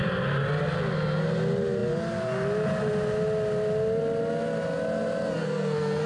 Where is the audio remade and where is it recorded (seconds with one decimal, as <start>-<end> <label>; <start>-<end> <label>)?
0.0-5.4 recorded; 5.4-6.1 remade